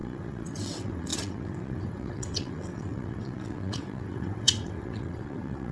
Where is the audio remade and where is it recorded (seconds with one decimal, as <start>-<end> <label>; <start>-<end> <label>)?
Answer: 0.0-5.7 remade